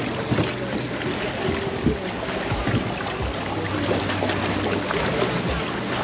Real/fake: real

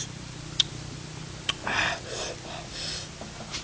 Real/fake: real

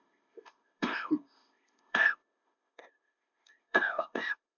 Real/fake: fake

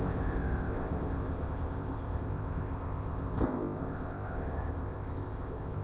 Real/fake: fake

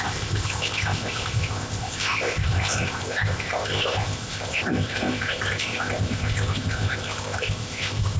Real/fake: fake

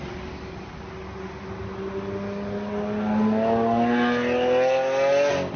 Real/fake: real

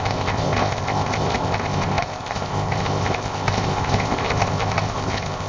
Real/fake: fake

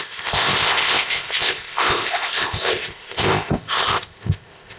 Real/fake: fake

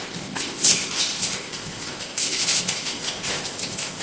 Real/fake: fake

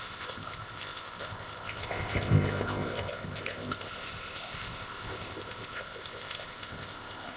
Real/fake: fake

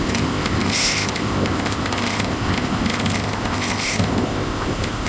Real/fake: fake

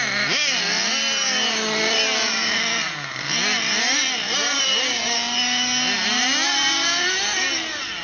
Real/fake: real